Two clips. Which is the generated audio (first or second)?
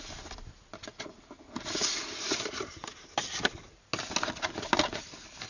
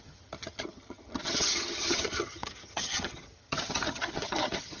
second